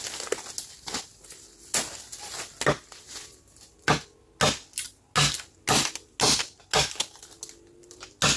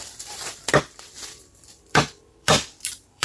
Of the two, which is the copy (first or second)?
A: second